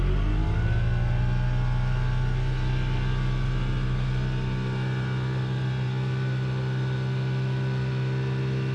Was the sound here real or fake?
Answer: real